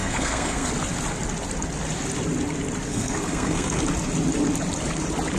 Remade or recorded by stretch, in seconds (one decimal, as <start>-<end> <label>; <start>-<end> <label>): 0.0-0.7 remade; 0.7-2.9 recorded; 2.9-3.8 remade; 3.8-5.4 recorded